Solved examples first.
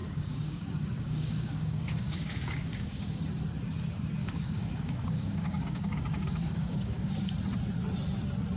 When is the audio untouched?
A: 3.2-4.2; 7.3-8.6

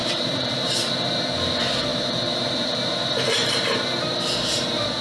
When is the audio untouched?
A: 0.9-1.9

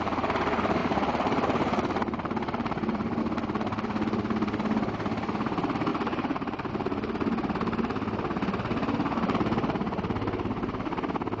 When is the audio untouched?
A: 0.0-0.8; 3.2-5.9; 6.7-11.4

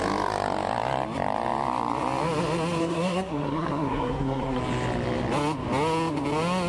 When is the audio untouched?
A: 0.0-2.8; 4.6-6.7

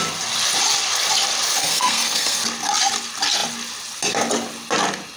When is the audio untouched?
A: 0.0-1.6; 2.4-5.2

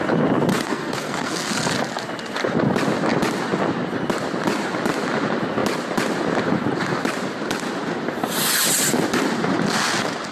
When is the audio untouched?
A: 0.0-0.5; 1.7-10.3

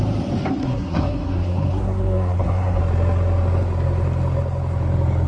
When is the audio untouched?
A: 0.0-0.6; 2.8-5.3